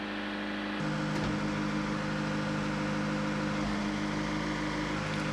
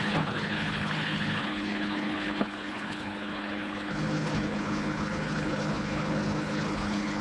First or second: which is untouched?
first